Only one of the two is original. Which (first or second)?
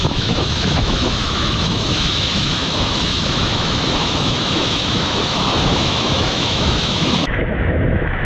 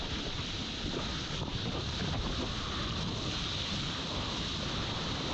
second